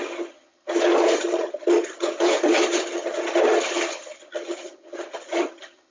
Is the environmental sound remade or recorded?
remade